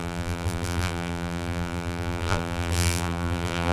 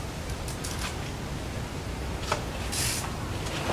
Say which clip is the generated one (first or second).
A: first